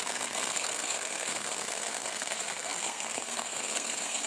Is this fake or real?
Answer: fake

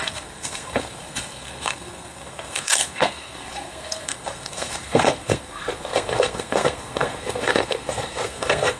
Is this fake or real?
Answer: fake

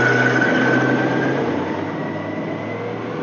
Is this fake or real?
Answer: real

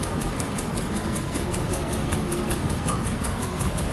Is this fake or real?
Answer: fake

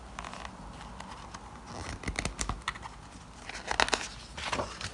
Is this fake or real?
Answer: real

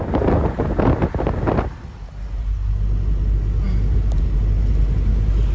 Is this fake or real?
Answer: real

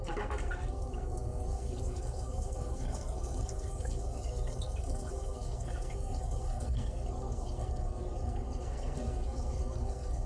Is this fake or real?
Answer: fake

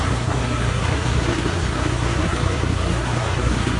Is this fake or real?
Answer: fake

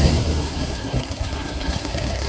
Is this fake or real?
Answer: fake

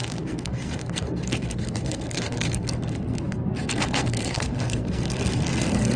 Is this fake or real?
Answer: fake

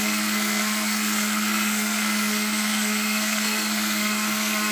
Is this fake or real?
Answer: fake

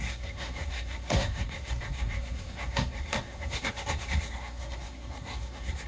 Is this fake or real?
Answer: fake